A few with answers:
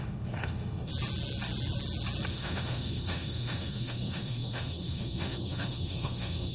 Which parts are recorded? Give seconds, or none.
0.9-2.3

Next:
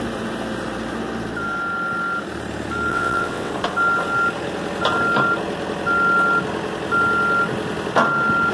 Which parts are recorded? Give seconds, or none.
0.0-2.9; 3.5-8.5

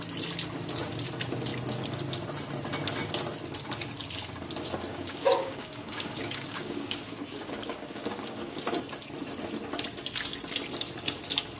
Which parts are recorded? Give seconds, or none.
0.0-4.9; 8.7-11.6

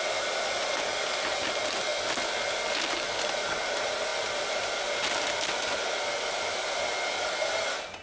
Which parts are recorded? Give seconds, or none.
0.0-8.0

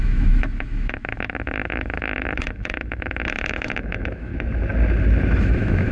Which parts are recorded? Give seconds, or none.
4.3-5.4